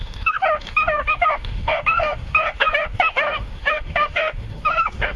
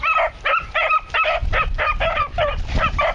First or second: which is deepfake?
first